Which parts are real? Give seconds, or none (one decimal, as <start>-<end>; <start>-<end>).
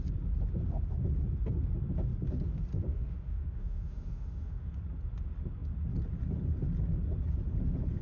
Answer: 0.0-2.9; 4.7-8.0